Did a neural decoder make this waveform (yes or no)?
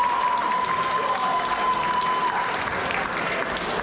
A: yes